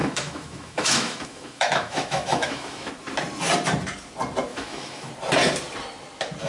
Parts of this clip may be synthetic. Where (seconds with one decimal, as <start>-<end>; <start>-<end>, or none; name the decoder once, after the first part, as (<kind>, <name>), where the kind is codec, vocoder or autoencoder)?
0.0-2.9 (autoencoder, DAC-VAE); 4.5-5.1